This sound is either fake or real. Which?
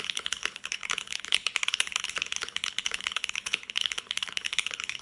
fake